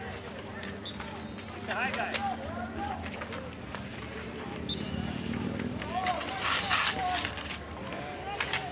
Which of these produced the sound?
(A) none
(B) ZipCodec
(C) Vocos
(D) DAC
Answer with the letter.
A